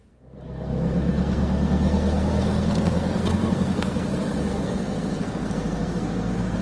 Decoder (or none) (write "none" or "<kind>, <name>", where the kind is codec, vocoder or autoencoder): codec, SNAC